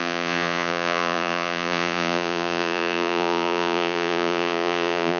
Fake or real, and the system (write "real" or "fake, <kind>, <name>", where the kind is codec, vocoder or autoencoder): fake, vocoder, Vocos